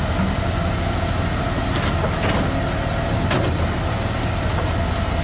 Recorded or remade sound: recorded